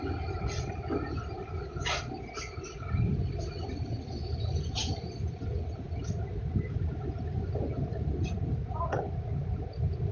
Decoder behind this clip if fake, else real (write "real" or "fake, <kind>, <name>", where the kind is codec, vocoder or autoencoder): real